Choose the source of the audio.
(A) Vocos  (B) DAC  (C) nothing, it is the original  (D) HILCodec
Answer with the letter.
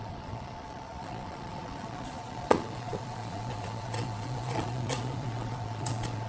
A